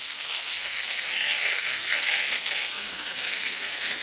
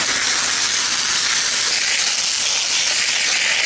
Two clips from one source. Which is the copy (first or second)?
first